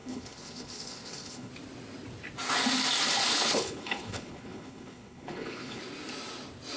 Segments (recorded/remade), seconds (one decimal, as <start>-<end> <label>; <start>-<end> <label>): 0.0-1.5 remade; 1.5-3.3 recorded; 3.3-5.8 remade; 5.8-6.8 recorded